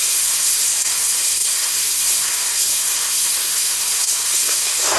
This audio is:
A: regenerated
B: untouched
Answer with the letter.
A